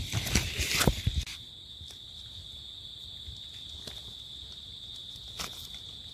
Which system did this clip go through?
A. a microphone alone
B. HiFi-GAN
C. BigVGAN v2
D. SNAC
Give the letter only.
A